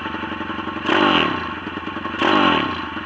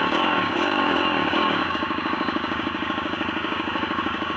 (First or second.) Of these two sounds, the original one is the first